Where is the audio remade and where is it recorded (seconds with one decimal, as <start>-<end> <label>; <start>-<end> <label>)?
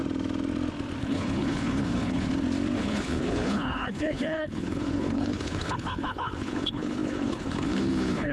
0.0-1.0 recorded; 1.0-2.3 remade; 2.3-2.8 recorded; 2.8-8.3 remade